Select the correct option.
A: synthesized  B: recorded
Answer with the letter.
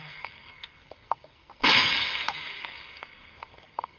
A